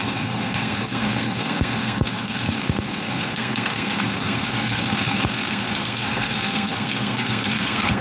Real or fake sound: fake